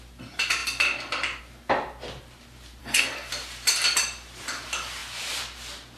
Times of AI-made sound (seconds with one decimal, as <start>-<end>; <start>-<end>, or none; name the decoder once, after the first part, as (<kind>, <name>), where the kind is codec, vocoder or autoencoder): 2.8-3.3 (codec, SNAC)

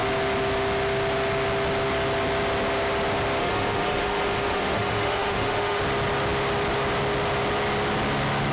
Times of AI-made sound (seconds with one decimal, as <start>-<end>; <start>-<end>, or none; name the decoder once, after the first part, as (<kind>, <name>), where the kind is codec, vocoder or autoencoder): 3.4-5.8 (autoencoder, DAC-VAE)

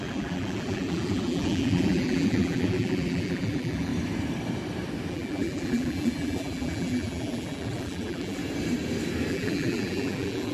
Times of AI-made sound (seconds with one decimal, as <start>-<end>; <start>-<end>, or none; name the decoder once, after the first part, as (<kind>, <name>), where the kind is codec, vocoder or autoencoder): 0.0-3.9 (vocoder, BigVGAN v2); 5.1-8.4; 9.3-10.5

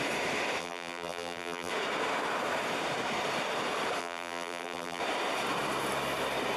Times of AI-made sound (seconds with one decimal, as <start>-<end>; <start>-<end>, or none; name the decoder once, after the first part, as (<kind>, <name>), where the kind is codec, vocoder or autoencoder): 0.6-1.7 (vocoder, BigVGAN v2); 4.0-5.0

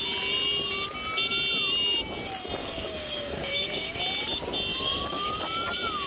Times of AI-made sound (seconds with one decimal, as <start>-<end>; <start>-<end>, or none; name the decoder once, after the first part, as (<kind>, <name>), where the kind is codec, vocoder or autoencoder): 2.6-4.0 (codec, DAC); 4.7-5.4

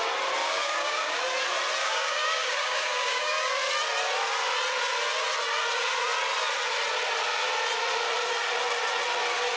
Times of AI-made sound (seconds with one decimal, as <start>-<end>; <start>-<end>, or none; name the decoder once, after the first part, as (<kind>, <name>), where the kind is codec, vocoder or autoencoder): 0.4-1.2 (codec, DAC); 1.8-3.5